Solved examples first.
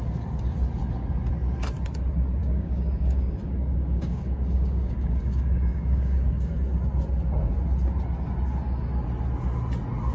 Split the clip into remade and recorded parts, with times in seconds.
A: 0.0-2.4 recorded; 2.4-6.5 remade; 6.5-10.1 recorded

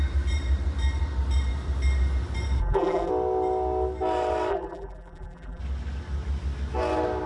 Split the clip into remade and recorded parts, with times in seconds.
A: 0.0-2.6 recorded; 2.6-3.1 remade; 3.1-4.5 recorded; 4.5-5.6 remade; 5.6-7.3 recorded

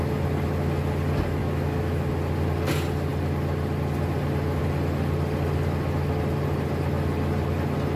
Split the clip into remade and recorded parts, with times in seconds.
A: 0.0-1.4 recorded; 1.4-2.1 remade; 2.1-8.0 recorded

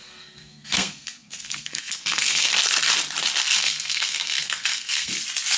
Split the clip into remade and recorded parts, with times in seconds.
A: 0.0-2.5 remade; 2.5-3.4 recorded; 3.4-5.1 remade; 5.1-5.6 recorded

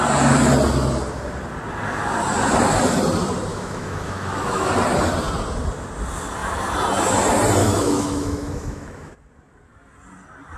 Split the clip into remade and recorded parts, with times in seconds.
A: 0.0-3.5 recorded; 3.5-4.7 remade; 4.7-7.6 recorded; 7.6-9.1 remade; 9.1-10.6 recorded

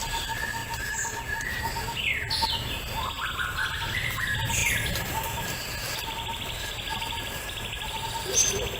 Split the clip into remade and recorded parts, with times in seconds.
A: 0.0-8.8 recorded